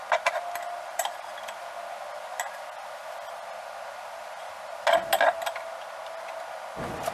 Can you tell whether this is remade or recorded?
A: recorded